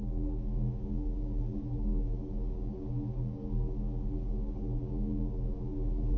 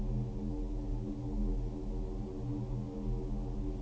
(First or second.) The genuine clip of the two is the second